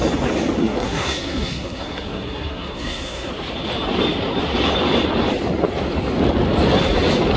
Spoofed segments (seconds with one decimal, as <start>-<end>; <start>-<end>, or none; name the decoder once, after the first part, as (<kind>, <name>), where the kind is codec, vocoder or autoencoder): 0.6-3.3 (codec, SNAC)